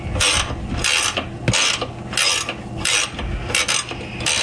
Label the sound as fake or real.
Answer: real